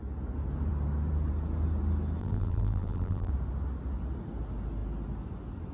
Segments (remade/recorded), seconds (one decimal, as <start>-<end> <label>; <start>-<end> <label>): 0.0-2.2 recorded; 2.2-3.3 remade; 3.3-5.7 recorded